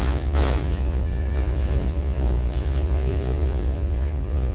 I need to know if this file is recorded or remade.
remade